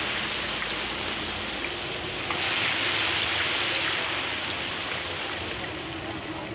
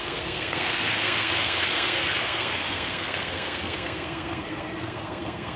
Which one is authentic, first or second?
first